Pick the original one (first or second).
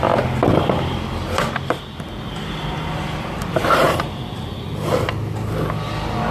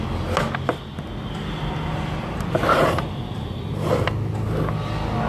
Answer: second